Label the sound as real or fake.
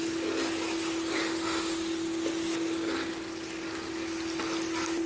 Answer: real